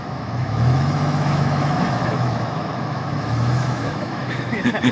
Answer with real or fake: fake